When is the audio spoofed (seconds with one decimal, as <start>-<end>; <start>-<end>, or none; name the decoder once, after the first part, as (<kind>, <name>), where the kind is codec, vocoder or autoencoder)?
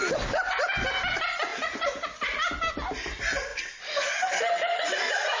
none